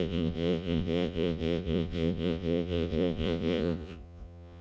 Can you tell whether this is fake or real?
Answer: fake